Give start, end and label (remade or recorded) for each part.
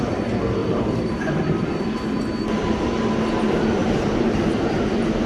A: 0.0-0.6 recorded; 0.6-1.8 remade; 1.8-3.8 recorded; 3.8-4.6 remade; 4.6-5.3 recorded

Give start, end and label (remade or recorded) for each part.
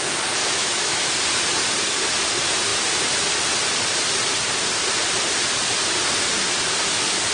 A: 0.0-0.4 recorded; 0.4-1.1 remade; 1.1-7.3 recorded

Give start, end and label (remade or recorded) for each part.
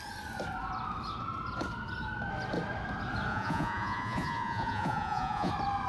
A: 0.0-3.3 recorded; 3.3-5.5 remade; 5.5-5.9 recorded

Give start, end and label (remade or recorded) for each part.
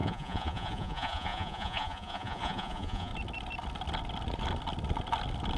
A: 0.0-3.1 remade; 3.1-5.6 recorded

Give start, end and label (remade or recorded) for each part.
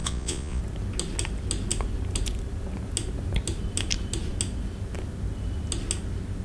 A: 0.0-0.6 remade; 0.6-6.4 recorded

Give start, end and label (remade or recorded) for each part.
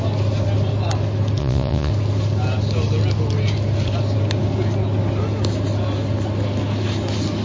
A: 0.0-1.4 recorded; 1.4-1.9 remade; 1.9-7.4 recorded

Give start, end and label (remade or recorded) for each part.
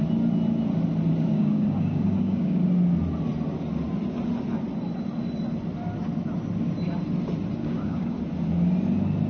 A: 0.0-1.3 recorded; 1.3-2.6 remade; 2.6-7.6 recorded; 7.6-8.2 remade; 8.2-9.3 recorded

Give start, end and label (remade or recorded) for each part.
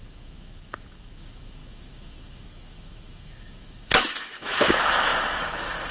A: 0.0-5.9 remade